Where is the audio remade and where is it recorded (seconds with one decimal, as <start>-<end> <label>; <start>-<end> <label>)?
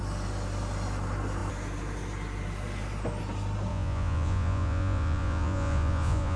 0.0-3.7 recorded; 3.7-6.4 remade